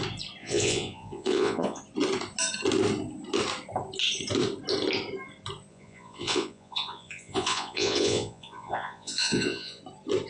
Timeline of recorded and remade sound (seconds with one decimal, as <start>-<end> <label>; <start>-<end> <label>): 0.0-0.4 recorded; 0.4-1.8 remade; 1.8-5.7 recorded; 5.7-9.8 remade; 9.8-10.3 recorded